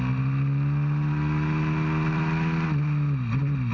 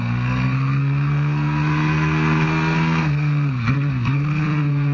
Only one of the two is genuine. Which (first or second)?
first